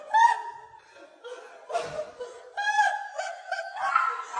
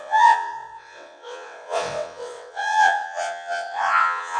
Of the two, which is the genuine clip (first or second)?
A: first